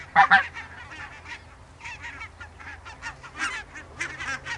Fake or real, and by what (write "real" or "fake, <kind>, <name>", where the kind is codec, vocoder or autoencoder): real